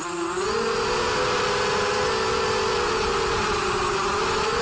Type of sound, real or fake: real